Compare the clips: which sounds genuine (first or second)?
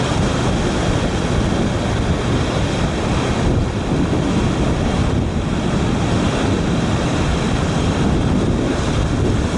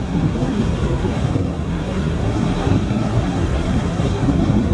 first